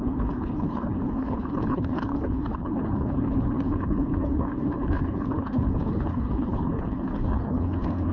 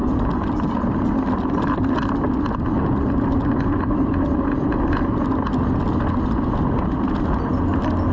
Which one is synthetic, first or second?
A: first